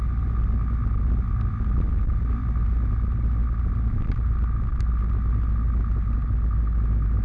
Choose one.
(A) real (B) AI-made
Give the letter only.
A